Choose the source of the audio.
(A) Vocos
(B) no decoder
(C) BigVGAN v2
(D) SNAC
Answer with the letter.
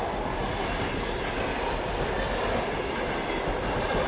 B